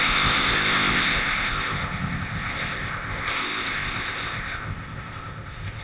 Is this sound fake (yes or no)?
yes